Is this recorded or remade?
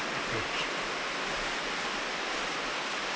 recorded